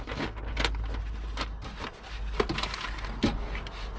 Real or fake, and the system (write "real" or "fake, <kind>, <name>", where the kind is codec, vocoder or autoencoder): real